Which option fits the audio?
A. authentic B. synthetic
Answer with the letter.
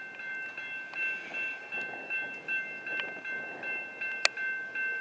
A